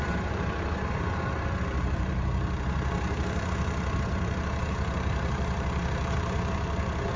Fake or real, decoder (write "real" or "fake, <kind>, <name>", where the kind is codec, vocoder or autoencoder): fake, vocoder, BigVGAN v2